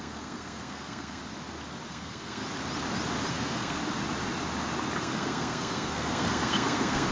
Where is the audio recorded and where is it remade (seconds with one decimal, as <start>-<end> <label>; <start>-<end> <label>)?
0.0-1.2 remade; 1.2-1.9 recorded; 1.9-2.4 remade; 2.4-3.3 recorded; 3.3-3.8 remade; 3.8-5.0 recorded; 5.0-7.1 remade